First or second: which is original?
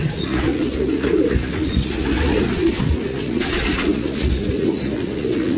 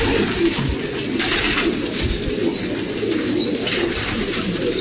second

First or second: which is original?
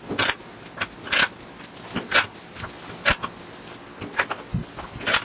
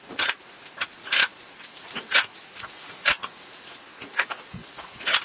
first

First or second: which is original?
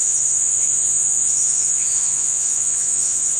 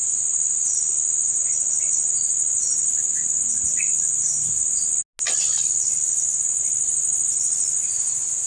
second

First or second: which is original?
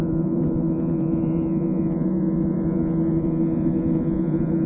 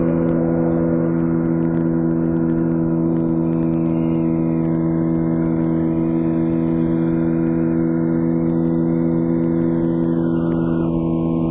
second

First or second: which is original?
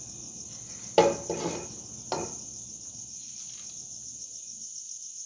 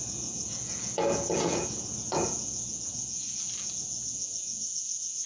first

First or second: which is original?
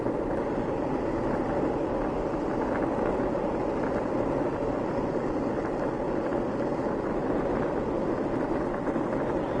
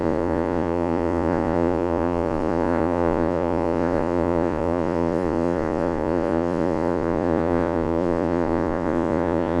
first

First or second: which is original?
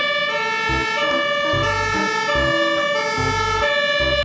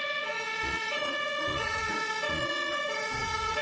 first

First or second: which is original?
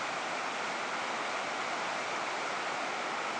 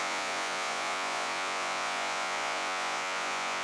first